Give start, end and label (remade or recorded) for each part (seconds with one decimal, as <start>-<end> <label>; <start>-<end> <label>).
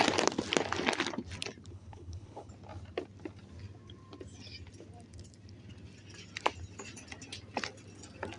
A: 0.0-1.7 recorded; 1.7-2.5 remade; 2.5-8.4 recorded